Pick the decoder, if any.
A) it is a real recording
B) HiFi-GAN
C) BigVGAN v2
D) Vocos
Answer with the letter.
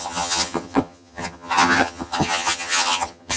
B